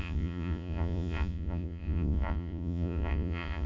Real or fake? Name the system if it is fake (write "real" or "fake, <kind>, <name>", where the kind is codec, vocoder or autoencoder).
fake, vocoder, Vocos